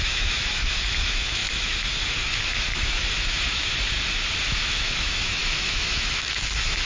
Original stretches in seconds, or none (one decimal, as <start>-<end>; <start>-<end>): 3.7-4.4